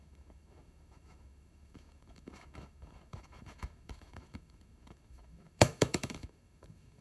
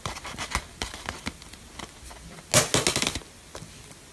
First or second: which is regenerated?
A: first